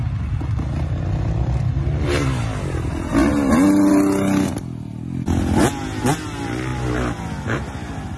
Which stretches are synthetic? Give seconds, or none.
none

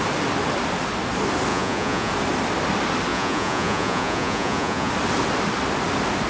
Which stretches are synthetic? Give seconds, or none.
1.5-2.1 (vocoder, Vocos); 3.1-4.9